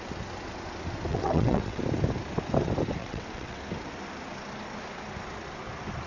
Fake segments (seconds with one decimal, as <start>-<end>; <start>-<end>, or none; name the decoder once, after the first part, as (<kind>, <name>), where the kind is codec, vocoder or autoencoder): 1.1-1.8 (vocoder, WaveNeXt); 3.0-3.6

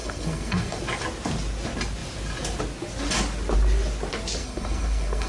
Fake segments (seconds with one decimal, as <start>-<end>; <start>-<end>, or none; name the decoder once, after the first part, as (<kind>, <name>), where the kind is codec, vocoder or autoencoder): 0.0-0.8 (codec, SNAC); 4.4-5.3